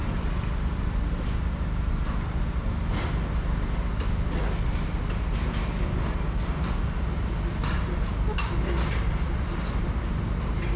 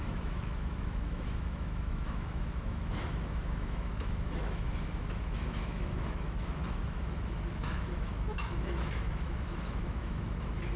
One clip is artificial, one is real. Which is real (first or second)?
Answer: first